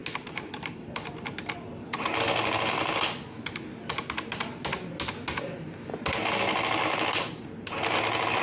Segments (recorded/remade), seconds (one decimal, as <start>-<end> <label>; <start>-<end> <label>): 0.0-8.4 recorded